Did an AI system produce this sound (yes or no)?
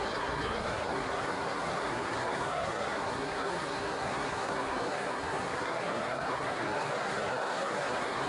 yes